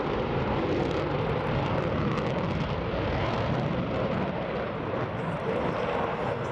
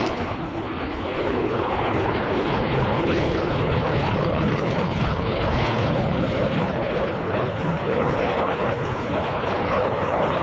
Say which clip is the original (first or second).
first